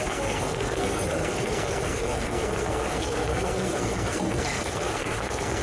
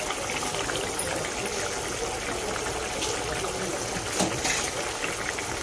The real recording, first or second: second